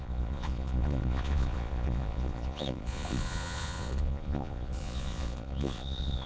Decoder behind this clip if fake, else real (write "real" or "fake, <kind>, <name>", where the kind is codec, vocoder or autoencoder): fake, vocoder, Vocos